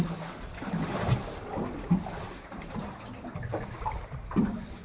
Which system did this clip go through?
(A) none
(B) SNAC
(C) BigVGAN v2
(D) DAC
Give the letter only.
A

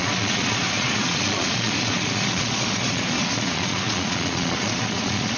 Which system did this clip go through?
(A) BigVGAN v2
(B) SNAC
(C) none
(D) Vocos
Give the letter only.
D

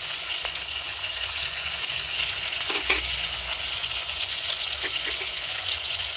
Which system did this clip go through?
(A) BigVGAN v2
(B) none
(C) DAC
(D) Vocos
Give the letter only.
D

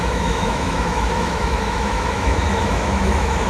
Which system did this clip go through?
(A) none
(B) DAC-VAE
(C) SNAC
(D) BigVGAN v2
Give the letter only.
B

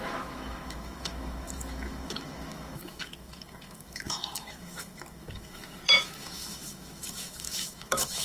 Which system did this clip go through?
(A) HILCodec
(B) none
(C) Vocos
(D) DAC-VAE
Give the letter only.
D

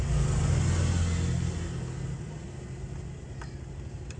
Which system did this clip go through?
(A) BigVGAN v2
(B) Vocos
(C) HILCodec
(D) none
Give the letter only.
D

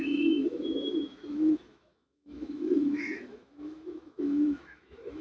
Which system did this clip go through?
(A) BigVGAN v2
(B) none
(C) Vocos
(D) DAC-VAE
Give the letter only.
D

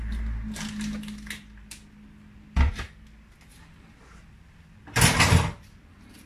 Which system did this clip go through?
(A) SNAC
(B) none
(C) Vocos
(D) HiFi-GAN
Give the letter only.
B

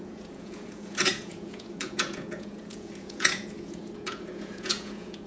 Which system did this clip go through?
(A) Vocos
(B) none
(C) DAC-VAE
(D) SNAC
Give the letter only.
A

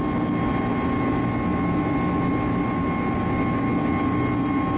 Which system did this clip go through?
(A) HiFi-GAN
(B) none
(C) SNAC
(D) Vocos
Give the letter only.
B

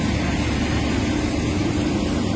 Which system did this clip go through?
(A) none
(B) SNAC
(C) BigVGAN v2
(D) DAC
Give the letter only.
A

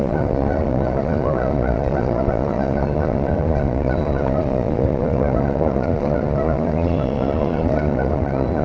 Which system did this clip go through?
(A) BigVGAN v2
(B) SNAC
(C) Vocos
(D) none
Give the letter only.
C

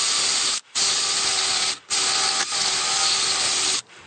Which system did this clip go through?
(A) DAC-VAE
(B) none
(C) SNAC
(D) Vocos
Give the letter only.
B